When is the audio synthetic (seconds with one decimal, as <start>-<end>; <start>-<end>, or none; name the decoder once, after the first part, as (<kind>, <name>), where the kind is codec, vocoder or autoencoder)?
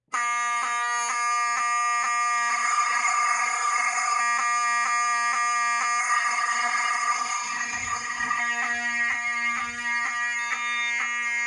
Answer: 2.5-4.2 (codec, SNAC); 6.0-8.4